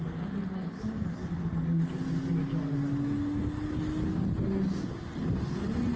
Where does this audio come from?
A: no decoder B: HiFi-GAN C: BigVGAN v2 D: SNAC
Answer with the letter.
A